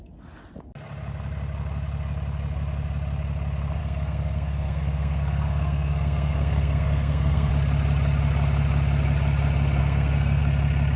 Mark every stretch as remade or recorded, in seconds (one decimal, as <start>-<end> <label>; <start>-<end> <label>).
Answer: 0.0-3.8 recorded; 3.8-7.5 remade; 7.5-9.8 recorded; 9.8-10.4 remade; 10.4-11.0 recorded